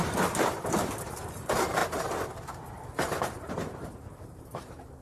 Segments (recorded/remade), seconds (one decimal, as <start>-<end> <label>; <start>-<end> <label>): 0.0-5.0 remade